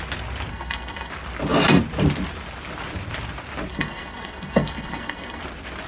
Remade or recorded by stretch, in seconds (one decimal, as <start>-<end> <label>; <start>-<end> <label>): 0.0-0.5 recorded; 0.5-1.1 remade; 1.1-3.7 recorded; 3.7-5.4 remade; 5.4-5.9 recorded